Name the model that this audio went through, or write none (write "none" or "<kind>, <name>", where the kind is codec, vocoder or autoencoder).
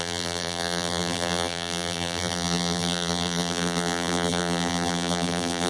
vocoder, BigVGAN v2